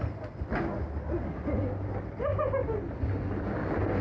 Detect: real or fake real